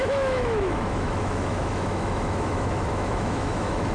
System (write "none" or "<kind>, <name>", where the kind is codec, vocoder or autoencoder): autoencoder, DAC-VAE